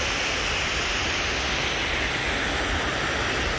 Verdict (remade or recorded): recorded